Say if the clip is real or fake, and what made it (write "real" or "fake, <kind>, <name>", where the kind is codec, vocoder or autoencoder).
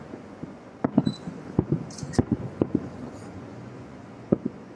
fake, vocoder, Vocos